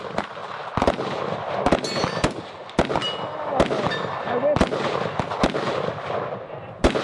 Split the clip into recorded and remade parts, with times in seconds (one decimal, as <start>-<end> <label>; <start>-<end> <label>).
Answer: 0.0-7.0 recorded